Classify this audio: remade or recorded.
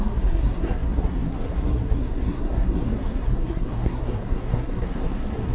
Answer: remade